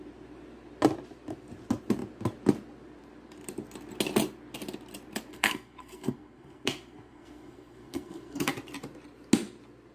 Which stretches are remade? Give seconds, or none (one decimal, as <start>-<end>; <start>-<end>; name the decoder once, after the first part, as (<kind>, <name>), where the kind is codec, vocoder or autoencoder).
5.3-8.5 (codec, SNAC)